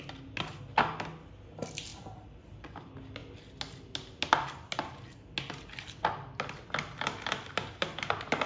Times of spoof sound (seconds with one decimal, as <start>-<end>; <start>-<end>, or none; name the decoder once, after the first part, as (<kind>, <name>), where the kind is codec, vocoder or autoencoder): none